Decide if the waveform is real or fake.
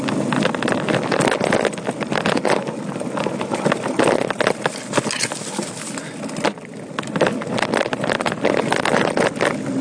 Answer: real